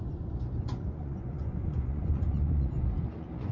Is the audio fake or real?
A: fake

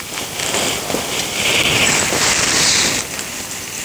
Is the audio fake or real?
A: real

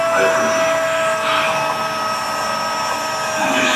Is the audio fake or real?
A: real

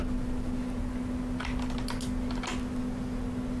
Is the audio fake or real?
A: real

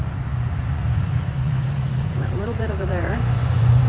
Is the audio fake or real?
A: fake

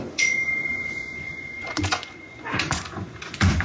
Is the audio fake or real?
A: fake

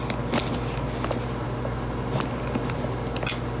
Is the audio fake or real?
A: real